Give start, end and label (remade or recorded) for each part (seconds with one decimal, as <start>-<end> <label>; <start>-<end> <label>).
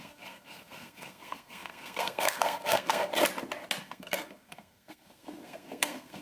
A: 0.0-3.1 remade; 3.1-3.8 recorded; 3.8-6.2 remade